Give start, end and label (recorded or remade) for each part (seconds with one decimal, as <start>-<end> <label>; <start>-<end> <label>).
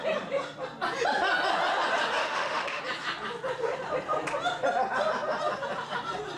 0.0-2.2 recorded; 2.2-2.8 remade; 2.8-6.4 recorded